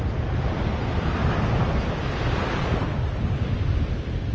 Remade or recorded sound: recorded